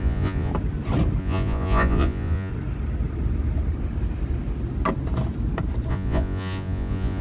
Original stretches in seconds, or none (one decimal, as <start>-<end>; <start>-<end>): 0.5-1.2; 2.5-5.9